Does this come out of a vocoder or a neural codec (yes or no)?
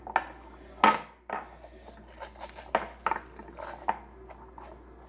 no